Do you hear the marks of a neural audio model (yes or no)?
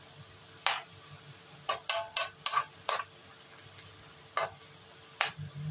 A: no